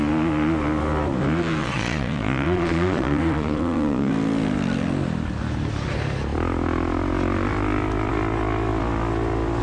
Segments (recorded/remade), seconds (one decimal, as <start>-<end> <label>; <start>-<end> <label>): 0.0-1.6 recorded; 1.6-4.1 remade; 4.1-9.6 recorded